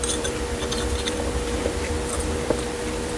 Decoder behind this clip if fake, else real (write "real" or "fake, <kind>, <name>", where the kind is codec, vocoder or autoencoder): fake, vocoder, BigVGAN v2